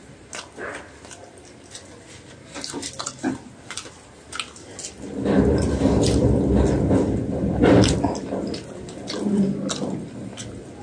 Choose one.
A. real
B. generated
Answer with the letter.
A